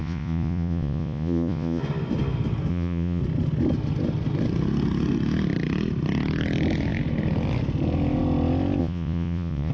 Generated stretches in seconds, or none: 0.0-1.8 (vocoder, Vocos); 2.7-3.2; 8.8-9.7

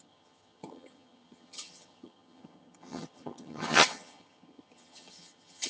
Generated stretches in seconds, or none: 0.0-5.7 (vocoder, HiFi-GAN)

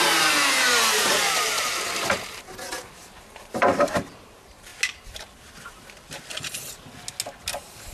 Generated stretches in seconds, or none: 0.0-4.7 (vocoder, BigVGAN v2); 7.4-7.9